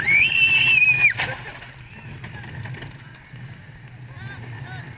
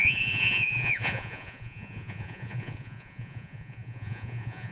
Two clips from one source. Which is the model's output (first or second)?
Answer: second